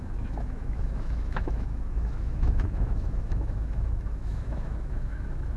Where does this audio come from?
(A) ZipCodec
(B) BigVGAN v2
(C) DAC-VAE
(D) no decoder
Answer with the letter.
C